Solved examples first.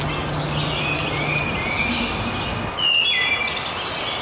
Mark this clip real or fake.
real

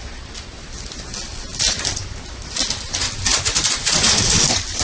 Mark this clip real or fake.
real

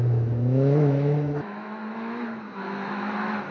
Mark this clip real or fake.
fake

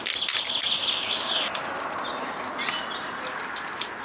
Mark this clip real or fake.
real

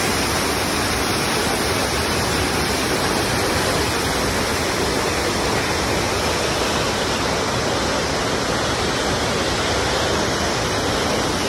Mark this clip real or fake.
real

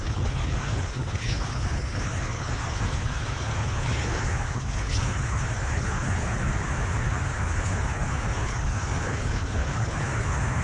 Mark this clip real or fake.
fake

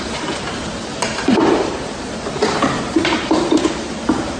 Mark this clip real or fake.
fake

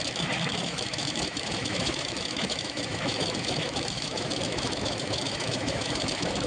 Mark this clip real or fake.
fake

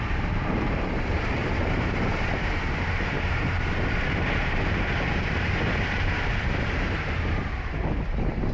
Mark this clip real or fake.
fake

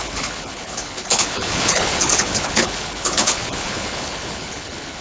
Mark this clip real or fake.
fake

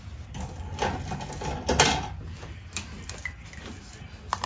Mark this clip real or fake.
real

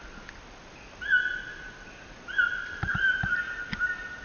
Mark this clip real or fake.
real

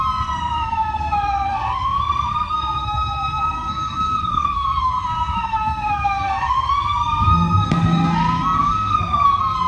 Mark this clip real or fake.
fake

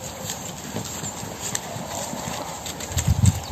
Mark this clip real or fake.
real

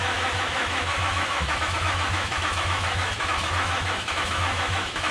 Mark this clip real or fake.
fake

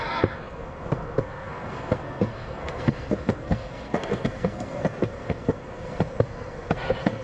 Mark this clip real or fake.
fake